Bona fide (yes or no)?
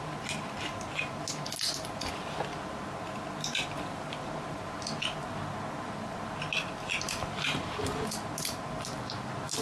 yes